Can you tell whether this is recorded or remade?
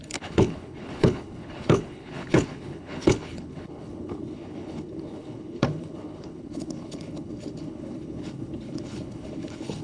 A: remade